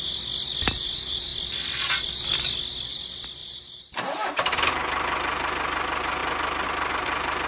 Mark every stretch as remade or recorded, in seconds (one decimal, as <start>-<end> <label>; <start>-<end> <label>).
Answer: 0.0-3.4 recorded; 3.4-4.7 remade; 4.7-7.5 recorded